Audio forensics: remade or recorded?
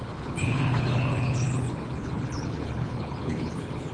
remade